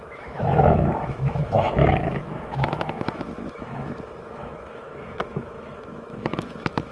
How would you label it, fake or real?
fake